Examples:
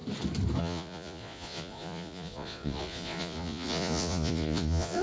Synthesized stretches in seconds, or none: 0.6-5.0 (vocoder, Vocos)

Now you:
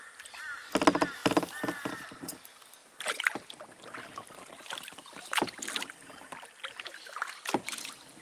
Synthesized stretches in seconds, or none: none

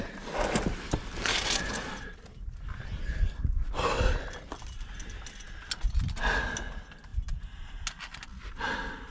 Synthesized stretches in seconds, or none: none

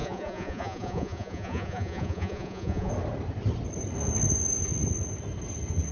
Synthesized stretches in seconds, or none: 0.0-2.9 (vocoder, Vocos)